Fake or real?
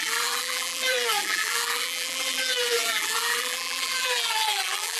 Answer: fake